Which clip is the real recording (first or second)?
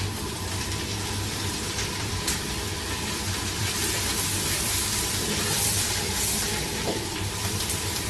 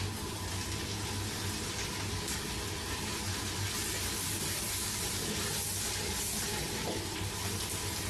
second